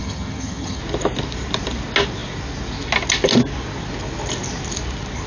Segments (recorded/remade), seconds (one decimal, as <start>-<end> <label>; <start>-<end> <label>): 0.0-0.8 remade; 0.8-5.3 recorded